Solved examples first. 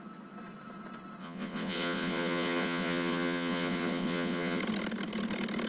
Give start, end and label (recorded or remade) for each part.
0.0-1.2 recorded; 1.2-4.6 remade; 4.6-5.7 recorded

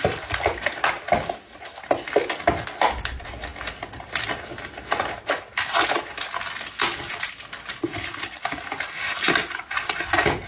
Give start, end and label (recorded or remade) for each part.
0.0-10.5 recorded

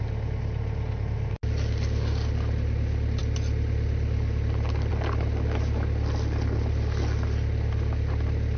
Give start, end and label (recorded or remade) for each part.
0.0-8.6 recorded

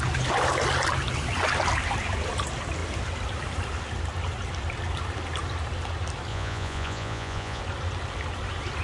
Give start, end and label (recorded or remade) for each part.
0.0-6.3 recorded; 6.3-7.6 remade; 7.6-8.8 recorded

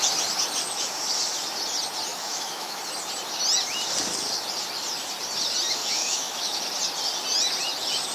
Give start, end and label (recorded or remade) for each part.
0.0-2.1 recorded; 2.1-2.8 remade; 2.8-5.8 recorded; 5.8-6.6 remade; 6.6-8.1 recorded

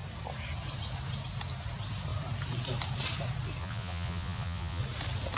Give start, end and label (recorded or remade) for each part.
0.0-3.6 recorded; 3.6-4.8 remade; 4.8-5.4 recorded